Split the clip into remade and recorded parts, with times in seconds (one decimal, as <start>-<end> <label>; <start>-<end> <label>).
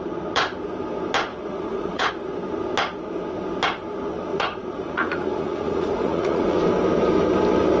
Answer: 0.0-1.3 recorded; 1.3-2.1 remade; 2.1-4.3 recorded; 4.3-6.6 remade; 6.6-7.8 recorded